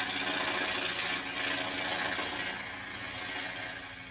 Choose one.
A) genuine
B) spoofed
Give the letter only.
A